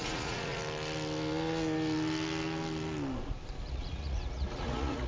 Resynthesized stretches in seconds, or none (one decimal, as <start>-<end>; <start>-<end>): 0.0-0.6; 3.7-5.1